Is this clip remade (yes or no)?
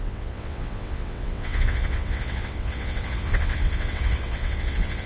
yes